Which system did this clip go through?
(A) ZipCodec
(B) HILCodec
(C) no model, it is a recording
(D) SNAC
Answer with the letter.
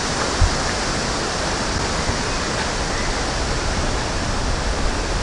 C